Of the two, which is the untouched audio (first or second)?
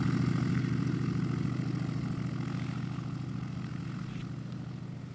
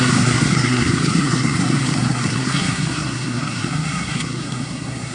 first